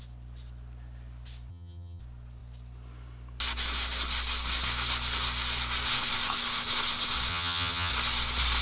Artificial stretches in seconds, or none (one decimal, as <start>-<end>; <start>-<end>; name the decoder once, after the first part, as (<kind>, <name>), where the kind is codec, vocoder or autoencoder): 1.5-2.0 (vocoder, HiFi-GAN); 7.3-7.9